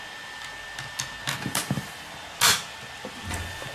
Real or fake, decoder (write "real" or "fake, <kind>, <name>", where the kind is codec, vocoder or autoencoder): real